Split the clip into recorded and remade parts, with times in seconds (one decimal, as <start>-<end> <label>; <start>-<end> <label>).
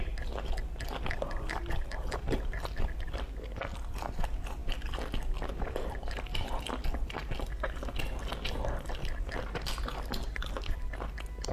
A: 0.0-11.5 recorded